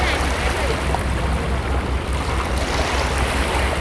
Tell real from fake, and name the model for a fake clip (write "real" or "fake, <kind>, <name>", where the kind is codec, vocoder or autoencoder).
real